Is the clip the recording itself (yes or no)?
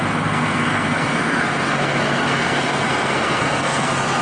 no